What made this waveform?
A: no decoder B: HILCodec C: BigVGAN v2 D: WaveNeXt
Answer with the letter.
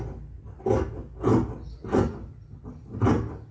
A